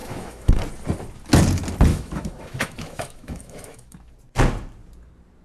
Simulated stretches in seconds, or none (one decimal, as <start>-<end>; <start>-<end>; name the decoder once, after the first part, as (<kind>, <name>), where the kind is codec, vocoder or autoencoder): 0.0-0.6 (autoencoder, DAC-VAE); 1.9-4.1